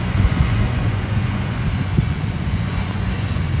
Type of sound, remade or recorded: remade